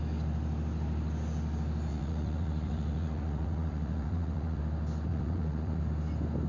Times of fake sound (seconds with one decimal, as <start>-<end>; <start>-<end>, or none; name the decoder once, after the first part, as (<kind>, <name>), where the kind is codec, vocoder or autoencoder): 1.9-4.6 (vocoder, Vocos); 5.1-5.8